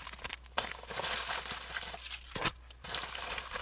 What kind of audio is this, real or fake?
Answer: real